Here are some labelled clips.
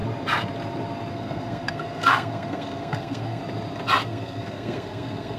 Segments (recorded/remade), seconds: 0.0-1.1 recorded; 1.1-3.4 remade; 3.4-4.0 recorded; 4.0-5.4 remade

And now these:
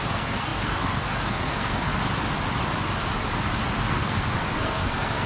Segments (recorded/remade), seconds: 0.0-1.9 remade; 1.9-3.8 recorded; 3.8-5.3 remade